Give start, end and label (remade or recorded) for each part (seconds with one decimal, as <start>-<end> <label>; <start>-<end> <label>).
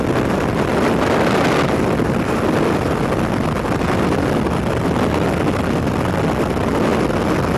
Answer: 0.0-0.7 recorded; 0.7-4.8 remade; 4.8-7.6 recorded